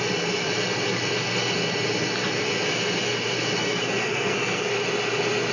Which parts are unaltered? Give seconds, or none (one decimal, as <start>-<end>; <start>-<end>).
0.0-3.6; 4.7-5.5

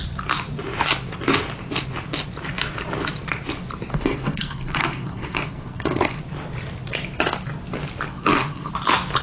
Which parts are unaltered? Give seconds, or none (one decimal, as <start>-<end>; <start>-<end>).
0.0-3.9; 6.2-8.1; 8.7-9.2

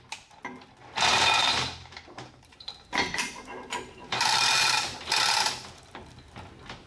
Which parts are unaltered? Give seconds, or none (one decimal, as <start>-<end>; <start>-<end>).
0.0-1.1; 5.0-6.9

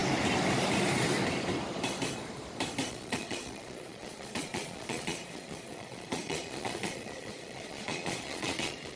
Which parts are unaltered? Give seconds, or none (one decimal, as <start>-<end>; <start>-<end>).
0.0-2.9

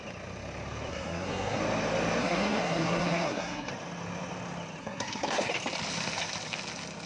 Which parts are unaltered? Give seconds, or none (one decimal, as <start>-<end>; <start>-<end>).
0.0-0.9; 1.6-2.2; 3.7-4.8; 5.5-7.1

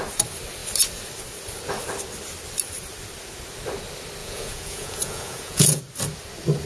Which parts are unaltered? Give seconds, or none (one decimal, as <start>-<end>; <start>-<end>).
0.0-4.2; 5.8-6.7

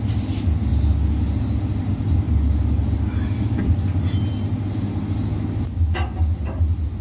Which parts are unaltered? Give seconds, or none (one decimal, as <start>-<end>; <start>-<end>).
0.0-7.0